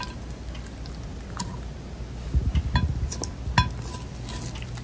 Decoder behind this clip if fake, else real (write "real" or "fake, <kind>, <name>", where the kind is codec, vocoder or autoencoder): real